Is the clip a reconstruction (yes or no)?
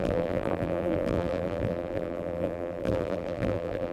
yes